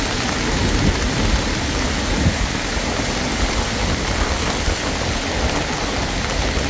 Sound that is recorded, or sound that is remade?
recorded